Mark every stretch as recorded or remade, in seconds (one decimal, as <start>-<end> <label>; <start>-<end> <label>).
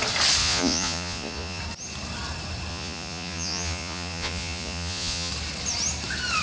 0.0-0.4 recorded; 0.4-1.6 remade; 1.6-2.7 recorded; 2.7-5.3 remade; 5.3-6.4 recorded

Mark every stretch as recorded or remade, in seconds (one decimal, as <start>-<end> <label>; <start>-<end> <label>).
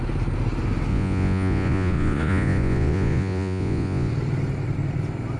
0.0-0.9 recorded; 0.9-4.1 remade; 4.1-5.4 recorded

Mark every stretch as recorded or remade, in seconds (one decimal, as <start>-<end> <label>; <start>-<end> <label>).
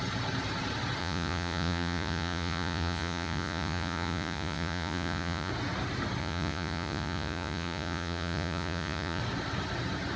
0.0-1.0 recorded; 1.0-5.5 remade; 5.5-6.2 recorded; 6.2-9.2 remade; 9.2-10.2 recorded